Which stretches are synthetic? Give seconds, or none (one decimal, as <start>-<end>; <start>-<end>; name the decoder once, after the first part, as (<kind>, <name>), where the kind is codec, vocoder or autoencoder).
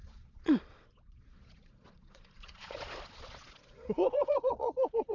0.0-5.1 (vocoder, Vocos)